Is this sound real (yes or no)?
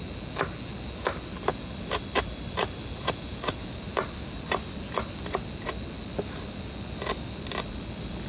yes